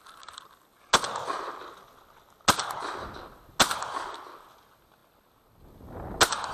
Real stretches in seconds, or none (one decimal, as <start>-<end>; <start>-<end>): 0.0-6.5